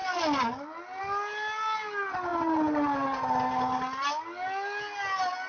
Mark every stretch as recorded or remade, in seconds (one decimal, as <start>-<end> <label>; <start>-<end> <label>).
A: 0.0-5.5 recorded

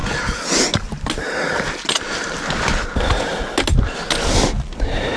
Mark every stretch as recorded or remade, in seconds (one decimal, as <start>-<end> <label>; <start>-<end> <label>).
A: 0.0-5.2 recorded

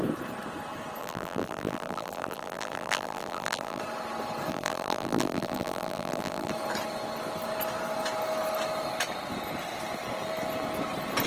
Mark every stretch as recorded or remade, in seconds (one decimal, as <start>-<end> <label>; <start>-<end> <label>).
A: 0.0-1.0 recorded; 1.0-3.8 remade; 3.8-4.5 recorded; 4.5-6.5 remade; 6.5-11.3 recorded

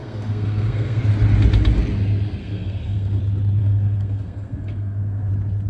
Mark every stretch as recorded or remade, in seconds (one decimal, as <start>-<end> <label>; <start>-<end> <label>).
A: 0.0-1.0 remade; 1.0-2.4 recorded; 2.4-3.2 remade; 3.2-3.6 recorded; 3.6-5.3 remade; 5.3-5.7 recorded

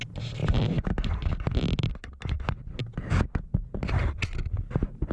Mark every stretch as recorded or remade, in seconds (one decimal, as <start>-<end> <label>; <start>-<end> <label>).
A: 0.0-5.1 recorded

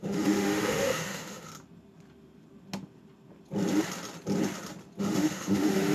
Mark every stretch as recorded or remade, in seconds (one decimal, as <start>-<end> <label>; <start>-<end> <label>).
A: 0.0-1.5 remade; 1.5-5.0 recorded; 5.0-5.9 remade

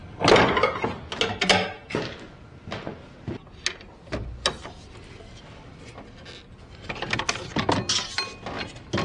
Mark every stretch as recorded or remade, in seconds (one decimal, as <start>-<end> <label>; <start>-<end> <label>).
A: 0.0-9.0 recorded

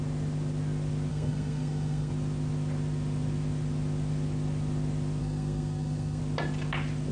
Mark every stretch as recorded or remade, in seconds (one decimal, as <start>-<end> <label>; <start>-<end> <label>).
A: 0.0-1.1 recorded; 1.1-2.1 remade; 2.1-5.2 recorded; 5.2-6.2 remade; 6.2-7.1 recorded